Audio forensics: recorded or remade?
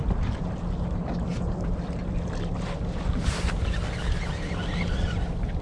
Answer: recorded